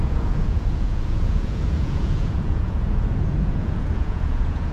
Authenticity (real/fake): fake